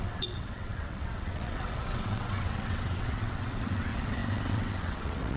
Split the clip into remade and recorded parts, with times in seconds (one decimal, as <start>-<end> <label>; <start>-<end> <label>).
0.0-5.4 remade